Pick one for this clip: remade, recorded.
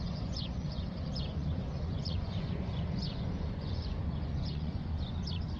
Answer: remade